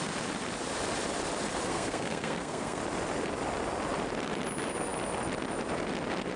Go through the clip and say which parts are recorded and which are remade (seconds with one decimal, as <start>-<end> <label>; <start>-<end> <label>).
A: 0.0-1.7 recorded; 1.7-2.8 remade; 2.8-6.4 recorded